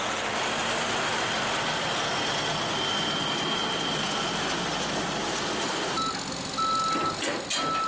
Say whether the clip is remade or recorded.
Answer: recorded